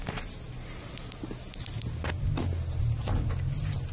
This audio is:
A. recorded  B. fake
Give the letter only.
A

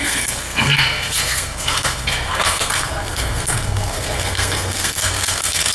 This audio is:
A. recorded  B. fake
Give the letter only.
B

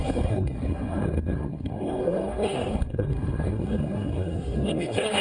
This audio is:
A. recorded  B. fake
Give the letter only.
B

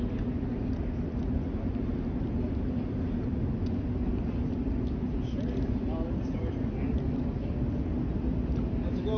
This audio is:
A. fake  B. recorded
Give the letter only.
B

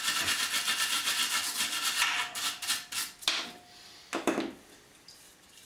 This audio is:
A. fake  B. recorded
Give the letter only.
B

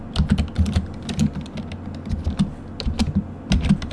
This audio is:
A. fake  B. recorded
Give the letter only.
B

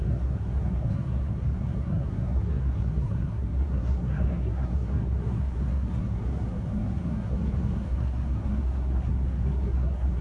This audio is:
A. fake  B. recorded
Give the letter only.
A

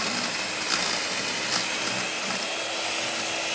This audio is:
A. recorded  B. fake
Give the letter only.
A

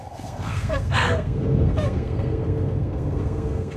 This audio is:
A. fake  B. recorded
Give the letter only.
A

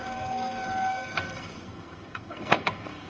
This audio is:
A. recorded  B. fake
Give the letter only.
B